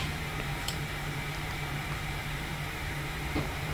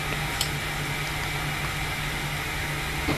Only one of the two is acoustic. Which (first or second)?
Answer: second